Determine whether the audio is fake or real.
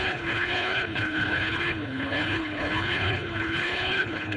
fake